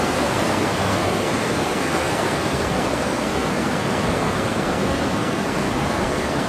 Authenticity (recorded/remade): remade